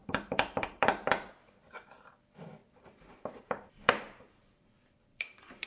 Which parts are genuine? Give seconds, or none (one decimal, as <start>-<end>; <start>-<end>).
1.3-2.6